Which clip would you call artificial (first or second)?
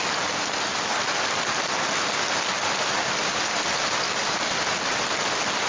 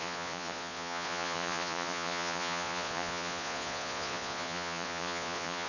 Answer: second